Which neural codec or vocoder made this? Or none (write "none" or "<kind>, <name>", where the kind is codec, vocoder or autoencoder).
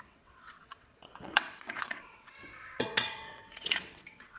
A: vocoder, WaveNeXt